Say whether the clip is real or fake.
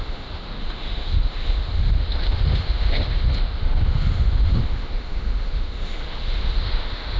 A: fake